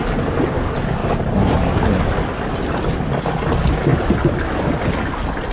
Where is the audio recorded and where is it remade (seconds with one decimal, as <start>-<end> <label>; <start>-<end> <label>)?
0.0-1.0 recorded; 1.0-2.5 remade; 2.5-5.5 recorded